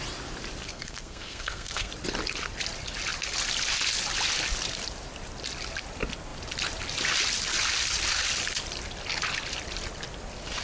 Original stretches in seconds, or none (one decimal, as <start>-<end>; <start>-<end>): 0.0-0.6; 1.9-10.6